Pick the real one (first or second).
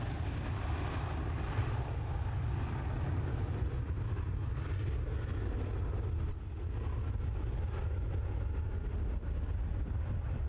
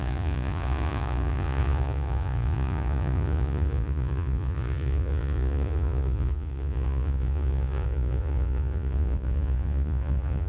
first